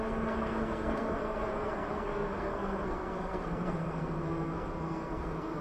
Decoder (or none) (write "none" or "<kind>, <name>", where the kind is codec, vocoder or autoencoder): codec, SNAC